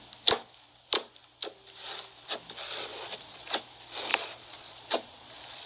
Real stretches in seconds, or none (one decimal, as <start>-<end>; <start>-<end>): 0.0-2.9; 3.5-4.1